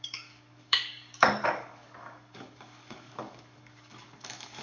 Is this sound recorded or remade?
remade